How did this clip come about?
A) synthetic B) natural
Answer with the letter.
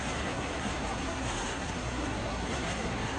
A